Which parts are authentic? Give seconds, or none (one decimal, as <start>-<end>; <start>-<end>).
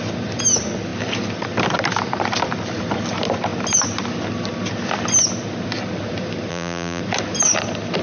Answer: 0.0-6.5; 7.0-8.0